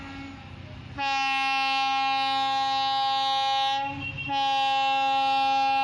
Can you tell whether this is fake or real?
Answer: real